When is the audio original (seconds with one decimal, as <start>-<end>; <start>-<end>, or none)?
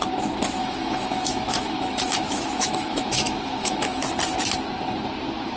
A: 0.0-0.6; 4.0-5.6